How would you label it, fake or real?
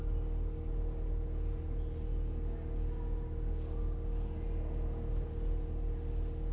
real